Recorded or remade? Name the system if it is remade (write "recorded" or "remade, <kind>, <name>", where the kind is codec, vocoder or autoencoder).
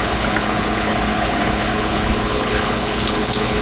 remade, codec, HILCodec